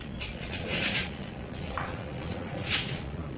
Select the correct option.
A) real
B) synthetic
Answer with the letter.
B